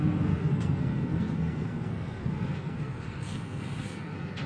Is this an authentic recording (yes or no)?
no